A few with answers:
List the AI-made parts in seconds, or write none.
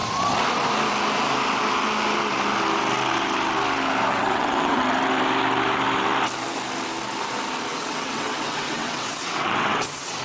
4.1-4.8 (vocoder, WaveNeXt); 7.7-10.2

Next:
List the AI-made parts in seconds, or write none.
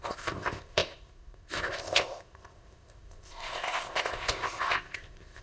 0.0-5.4 (codec, ZipCodec)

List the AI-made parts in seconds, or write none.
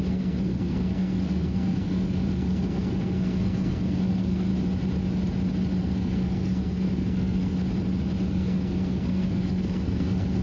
0.0-4.5 (codec, SNAC); 5.8-7.5; 8.3-10.4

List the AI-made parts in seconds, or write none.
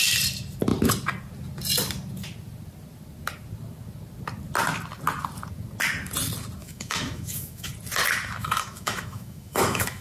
6.6-7.7 (autoencoder, DAC-VAE); 8.4-10.0